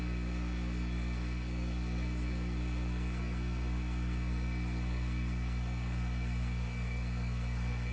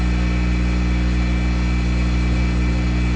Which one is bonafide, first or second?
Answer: second